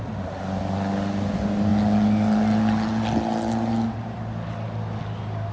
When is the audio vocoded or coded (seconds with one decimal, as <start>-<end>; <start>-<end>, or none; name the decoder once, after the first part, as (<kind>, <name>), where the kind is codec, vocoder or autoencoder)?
none